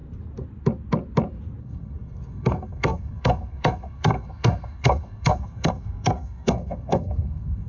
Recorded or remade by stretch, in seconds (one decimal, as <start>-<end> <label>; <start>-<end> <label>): 0.0-1.6 recorded; 1.6-7.7 remade